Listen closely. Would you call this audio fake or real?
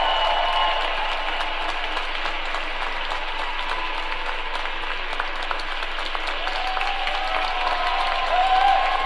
real